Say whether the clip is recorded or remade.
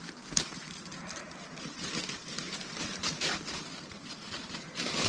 remade